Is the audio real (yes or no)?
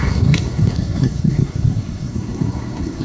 no